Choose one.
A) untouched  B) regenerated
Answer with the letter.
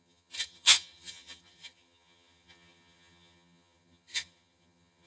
B